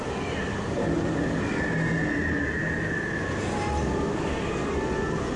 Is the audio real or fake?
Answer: real